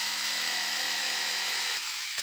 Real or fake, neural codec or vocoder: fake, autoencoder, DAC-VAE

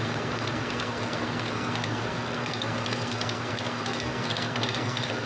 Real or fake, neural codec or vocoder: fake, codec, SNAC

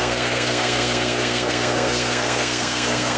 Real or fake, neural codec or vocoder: fake, codec, SNAC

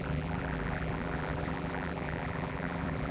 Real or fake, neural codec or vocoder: fake, vocoder, BigVGAN v2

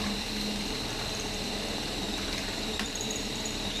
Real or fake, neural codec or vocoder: fake, vocoder, BigVGAN v2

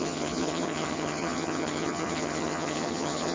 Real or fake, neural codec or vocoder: fake, vocoder, HiFi-GAN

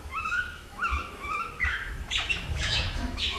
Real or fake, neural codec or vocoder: fake, autoencoder, DAC-VAE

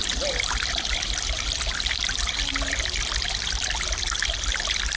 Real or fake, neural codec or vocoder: real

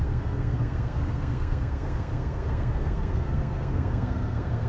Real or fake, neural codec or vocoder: fake, codec, SNAC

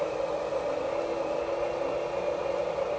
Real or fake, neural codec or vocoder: real